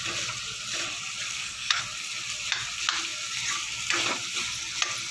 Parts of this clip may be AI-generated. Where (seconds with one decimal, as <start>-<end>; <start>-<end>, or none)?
1.3-1.8